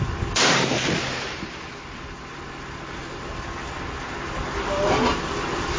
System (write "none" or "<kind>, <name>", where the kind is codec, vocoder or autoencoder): none